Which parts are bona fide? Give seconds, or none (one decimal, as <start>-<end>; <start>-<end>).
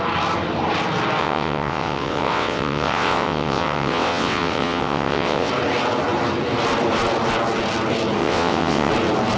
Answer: 0.0-1.2; 5.5-8.2; 8.9-9.4